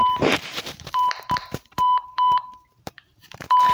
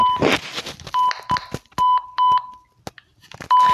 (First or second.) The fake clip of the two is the first